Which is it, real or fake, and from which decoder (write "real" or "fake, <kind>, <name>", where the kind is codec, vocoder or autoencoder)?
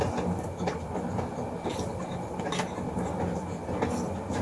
real